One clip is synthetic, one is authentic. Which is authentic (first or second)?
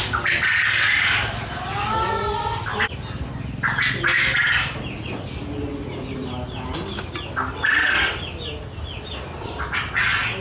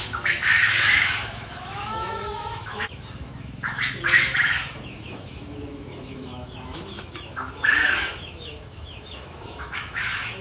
first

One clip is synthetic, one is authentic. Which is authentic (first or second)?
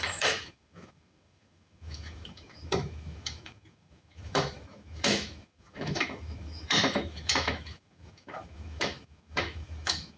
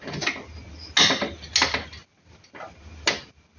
second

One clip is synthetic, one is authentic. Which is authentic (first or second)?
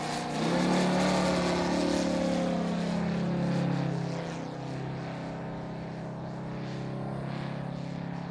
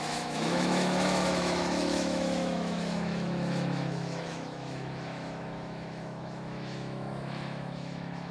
first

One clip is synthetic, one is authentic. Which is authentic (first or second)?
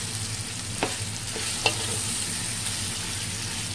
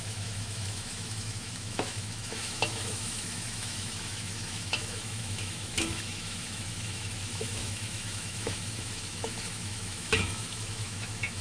first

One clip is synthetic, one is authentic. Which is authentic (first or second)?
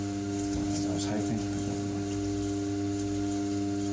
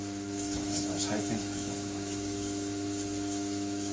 first